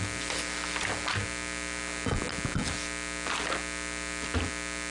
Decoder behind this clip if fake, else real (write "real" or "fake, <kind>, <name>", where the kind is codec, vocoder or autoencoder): real